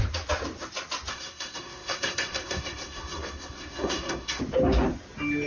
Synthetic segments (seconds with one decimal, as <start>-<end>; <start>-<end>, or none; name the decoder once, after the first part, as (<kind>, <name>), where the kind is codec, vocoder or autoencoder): 1.1-4.4 (codec, SNAC)